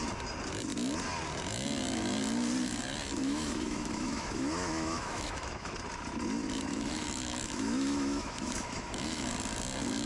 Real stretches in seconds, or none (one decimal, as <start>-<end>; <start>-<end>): 0.0-3.2; 5.7-6.7; 9.3-10.1